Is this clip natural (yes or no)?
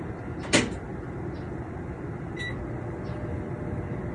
yes